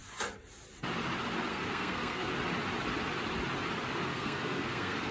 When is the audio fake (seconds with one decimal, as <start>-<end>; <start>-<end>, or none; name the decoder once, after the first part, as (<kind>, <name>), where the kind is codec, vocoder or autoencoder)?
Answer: 1.5-2.3 (codec, SNAC); 4.1-5.1